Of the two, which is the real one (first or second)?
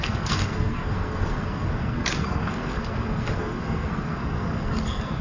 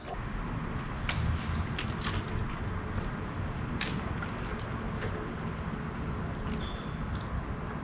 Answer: second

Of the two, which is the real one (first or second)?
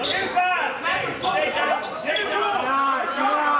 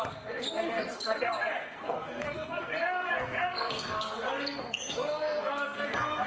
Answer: first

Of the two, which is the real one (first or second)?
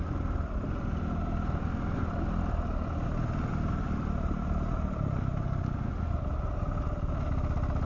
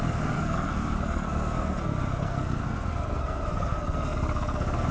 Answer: first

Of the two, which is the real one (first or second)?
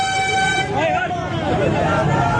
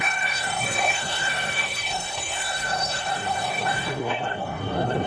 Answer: first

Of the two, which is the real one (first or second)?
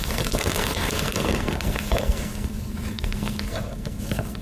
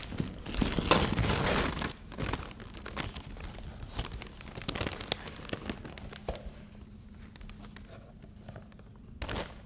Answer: second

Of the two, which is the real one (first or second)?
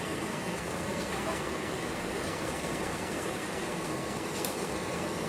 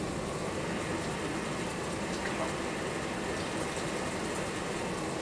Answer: second